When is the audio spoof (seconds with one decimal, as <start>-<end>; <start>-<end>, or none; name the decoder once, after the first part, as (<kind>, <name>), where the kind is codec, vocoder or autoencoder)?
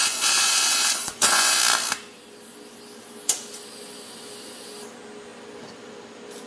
0.0-1.6 (vocoder, Vocos)